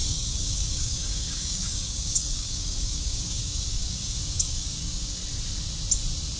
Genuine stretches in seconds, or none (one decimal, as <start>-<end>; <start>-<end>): 5.2-6.4